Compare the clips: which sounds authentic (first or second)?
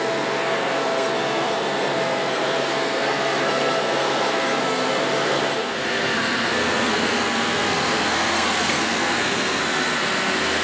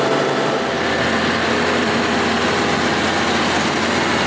second